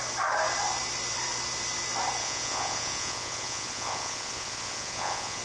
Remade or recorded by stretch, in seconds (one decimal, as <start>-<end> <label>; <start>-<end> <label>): 0.0-2.2 recorded; 2.2-5.4 remade